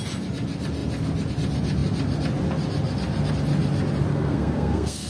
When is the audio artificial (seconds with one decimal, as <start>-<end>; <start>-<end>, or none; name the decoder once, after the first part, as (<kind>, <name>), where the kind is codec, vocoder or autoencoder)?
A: 4.1-5.1 (codec, SNAC)